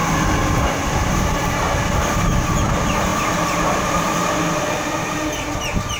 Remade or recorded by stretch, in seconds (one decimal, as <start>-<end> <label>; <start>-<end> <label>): 0.0-6.0 recorded